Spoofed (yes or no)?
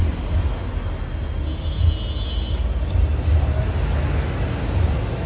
no